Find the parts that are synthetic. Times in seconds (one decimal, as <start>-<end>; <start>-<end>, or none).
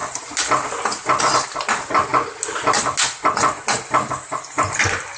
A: none